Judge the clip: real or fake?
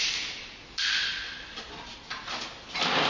real